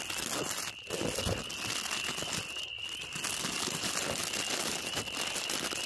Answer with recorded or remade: recorded